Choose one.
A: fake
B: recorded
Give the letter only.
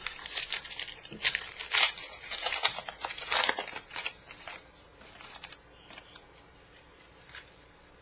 A